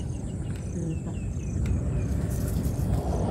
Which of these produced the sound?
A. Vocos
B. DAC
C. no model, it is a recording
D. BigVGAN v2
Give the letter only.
D